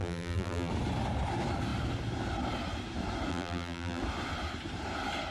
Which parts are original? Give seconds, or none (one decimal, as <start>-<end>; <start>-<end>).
0.7-3.3; 4.0-5.3